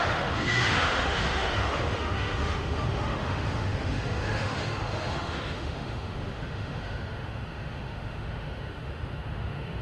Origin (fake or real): fake